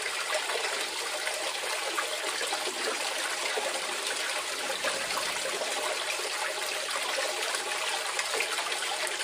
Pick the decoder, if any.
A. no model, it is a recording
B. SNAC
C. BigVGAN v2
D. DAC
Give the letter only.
A